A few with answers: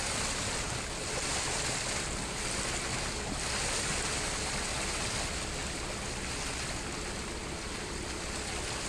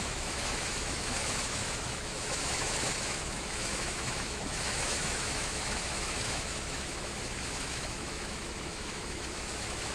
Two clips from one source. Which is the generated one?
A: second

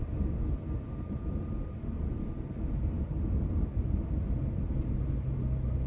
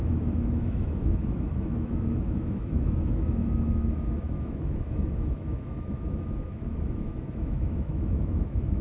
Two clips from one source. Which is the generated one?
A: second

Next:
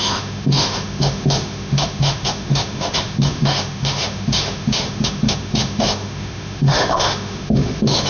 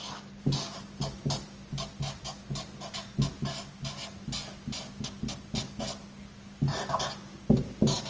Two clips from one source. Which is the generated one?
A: first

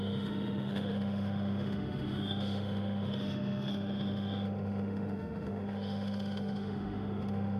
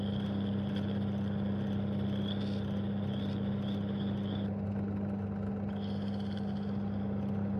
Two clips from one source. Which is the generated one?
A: first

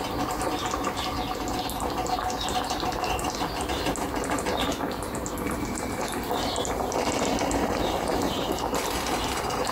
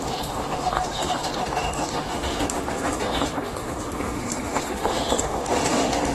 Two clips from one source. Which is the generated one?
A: second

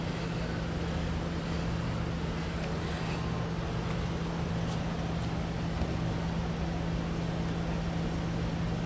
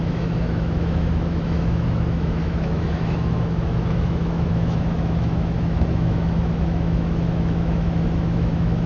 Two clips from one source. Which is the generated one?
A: second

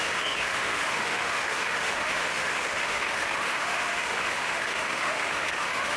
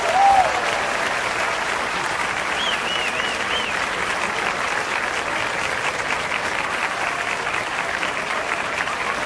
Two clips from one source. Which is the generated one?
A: first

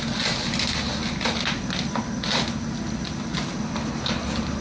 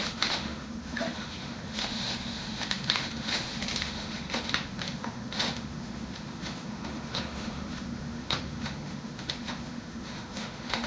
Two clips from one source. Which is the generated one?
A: second